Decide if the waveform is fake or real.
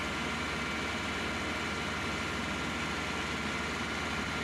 real